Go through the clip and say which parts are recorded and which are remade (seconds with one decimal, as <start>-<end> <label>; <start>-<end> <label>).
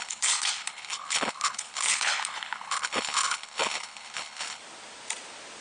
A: 0.0-4.6 remade; 4.6-5.6 recorded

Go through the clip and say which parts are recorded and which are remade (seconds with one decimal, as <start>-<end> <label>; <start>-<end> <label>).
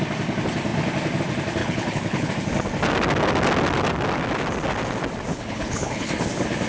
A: 0.0-1.6 recorded; 1.6-2.3 remade; 2.3-5.3 recorded; 5.3-6.1 remade; 6.1-6.7 recorded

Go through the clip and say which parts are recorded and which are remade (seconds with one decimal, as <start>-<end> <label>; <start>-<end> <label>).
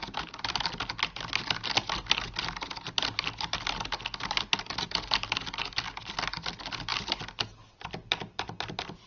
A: 0.0-9.1 recorded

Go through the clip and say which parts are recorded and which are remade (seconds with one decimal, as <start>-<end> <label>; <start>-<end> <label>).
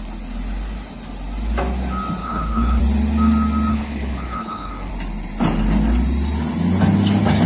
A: 0.0-2.2 recorded; 2.2-2.8 remade; 2.8-3.7 recorded; 3.7-4.9 remade; 4.9-7.5 recorded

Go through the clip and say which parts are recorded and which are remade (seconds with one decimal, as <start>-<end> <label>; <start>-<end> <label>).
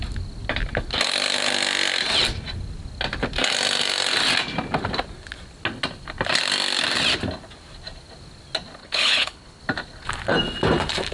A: 0.0-8.8 recorded; 8.8-9.6 remade; 9.6-11.1 recorded